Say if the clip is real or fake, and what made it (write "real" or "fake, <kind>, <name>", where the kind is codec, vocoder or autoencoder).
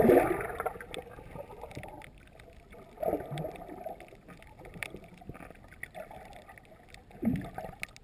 real